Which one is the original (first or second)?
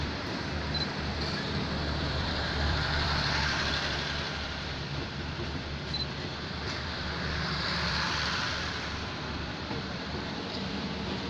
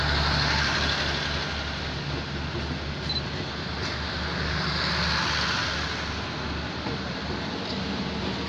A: second